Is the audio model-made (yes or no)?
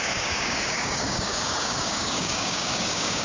yes